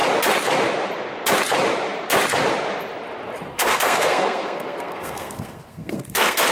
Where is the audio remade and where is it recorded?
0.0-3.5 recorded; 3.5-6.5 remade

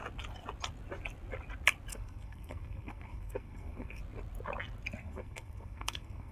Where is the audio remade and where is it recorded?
0.0-1.9 recorded; 1.9-4.0 remade; 4.0-5.0 recorded; 5.0-6.3 remade

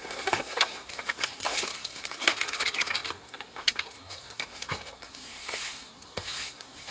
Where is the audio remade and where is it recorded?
0.0-6.9 remade

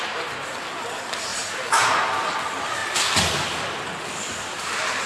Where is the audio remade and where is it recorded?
0.0-5.1 recorded

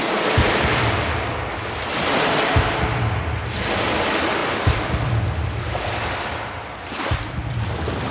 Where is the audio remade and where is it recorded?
0.0-8.1 recorded